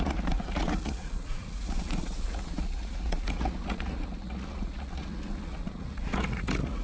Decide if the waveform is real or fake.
fake